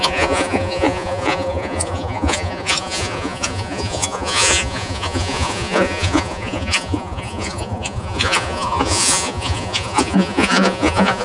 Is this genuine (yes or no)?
no